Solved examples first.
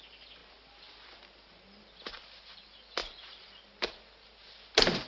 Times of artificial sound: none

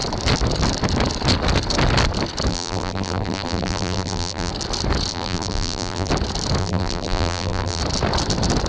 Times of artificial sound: 2.5-4.5 (vocoder, BigVGAN v2); 5.1-6.1; 6.6-7.8

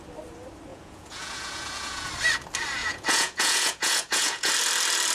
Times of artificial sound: 0.7-2.1 (vocoder, Vocos); 2.8-4.5

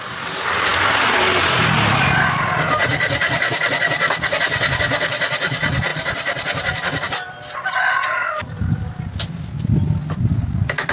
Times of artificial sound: none